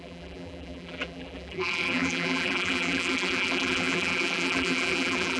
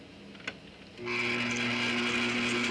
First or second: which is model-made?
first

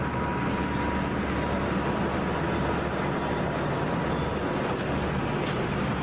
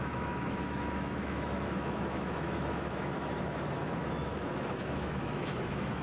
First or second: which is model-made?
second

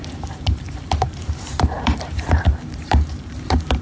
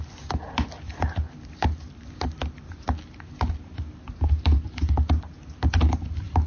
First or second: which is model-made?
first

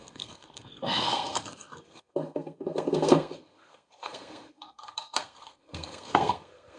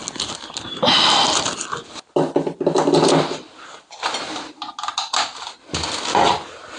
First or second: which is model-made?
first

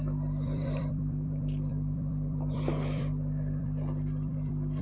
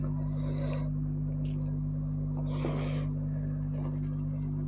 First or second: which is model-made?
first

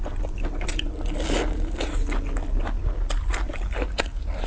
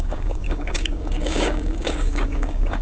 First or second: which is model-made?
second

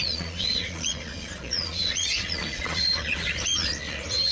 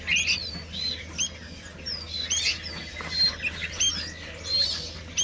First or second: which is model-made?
first